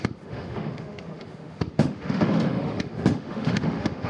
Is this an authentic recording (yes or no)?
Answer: no